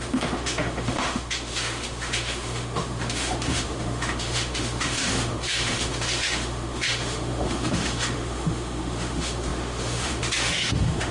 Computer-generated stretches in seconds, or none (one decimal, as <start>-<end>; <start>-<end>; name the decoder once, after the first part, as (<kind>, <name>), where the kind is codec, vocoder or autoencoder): 0.0-11.1 (autoencoder, DAC-VAE)